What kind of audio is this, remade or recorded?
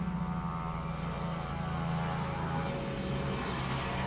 recorded